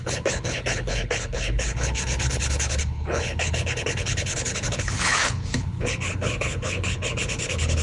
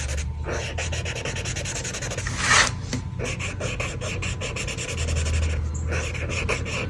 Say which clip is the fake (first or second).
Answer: first